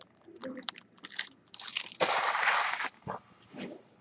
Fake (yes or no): yes